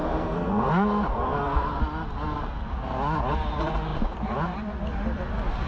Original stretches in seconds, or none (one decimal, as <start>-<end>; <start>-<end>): 0.7-1.1; 1.8-5.7